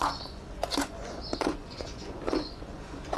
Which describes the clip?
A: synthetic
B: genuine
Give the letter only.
A